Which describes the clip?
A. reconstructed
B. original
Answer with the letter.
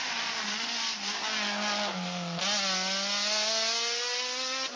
B